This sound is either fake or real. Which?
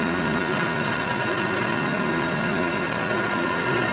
fake